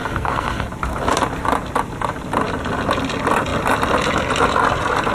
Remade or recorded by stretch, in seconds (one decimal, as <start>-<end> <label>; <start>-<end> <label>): 0.0-0.7 remade; 0.7-5.1 recorded

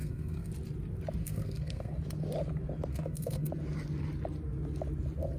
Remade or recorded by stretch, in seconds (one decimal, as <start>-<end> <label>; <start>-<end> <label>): 0.0-0.5 remade; 0.5-1.2 recorded; 1.2-1.9 remade; 1.9-2.9 recorded; 2.9-3.5 remade; 3.5-5.4 recorded